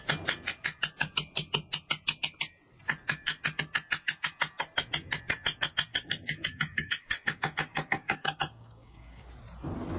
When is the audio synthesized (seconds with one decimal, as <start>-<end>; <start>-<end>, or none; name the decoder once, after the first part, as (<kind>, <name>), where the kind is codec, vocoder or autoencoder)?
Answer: 5.9-9.3 (codec, DAC)